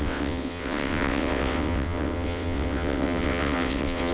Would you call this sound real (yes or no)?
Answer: no